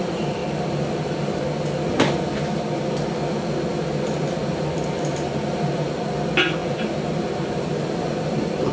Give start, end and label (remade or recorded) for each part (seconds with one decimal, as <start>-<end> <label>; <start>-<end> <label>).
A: 0.0-4.4 recorded; 4.4-5.8 remade; 5.8-6.6 recorded; 6.6-7.6 remade; 7.6-8.7 recorded